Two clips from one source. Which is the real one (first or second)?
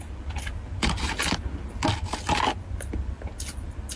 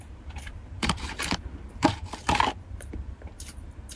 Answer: first